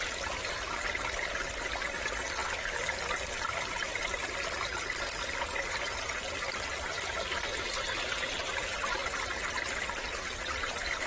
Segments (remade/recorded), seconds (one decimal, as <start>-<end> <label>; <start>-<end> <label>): 0.0-9.0 remade; 9.0-9.9 recorded; 9.9-11.1 remade